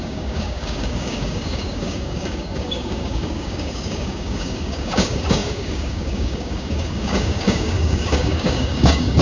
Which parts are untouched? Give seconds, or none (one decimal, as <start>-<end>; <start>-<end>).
none

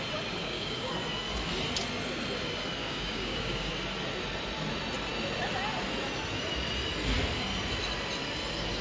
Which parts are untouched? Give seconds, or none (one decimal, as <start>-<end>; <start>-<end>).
0.0-0.4; 0.9-2.8; 3.7-8.8